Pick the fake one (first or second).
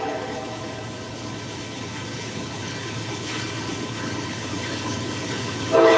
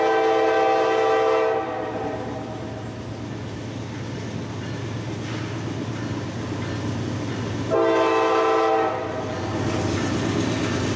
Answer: first